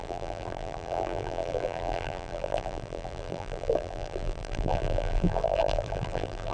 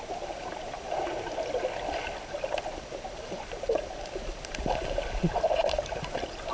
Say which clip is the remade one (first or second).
first